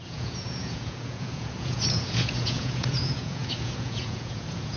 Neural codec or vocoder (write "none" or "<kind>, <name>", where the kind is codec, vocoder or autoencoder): vocoder, Vocos